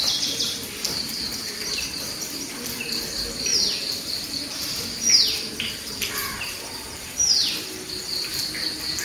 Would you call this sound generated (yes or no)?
yes